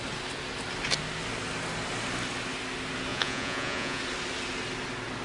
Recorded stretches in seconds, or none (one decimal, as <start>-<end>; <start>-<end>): 0.0-3.1; 4.0-5.2